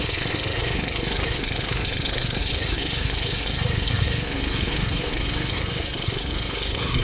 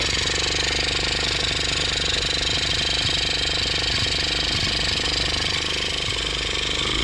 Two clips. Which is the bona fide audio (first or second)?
second